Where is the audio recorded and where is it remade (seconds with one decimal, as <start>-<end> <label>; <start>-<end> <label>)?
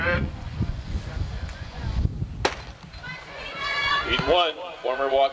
0.0-2.1 remade; 2.1-3.0 recorded; 3.0-5.3 remade